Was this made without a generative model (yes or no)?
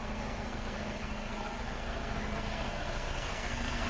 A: no